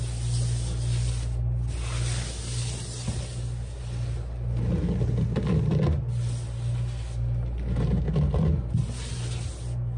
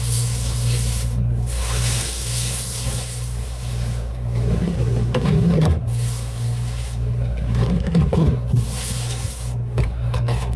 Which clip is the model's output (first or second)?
second